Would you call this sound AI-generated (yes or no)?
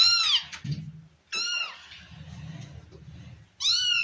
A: no